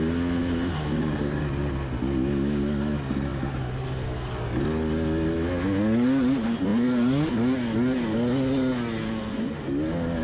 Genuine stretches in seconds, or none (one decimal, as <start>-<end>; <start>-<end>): 0.0-0.4; 1.7-10.2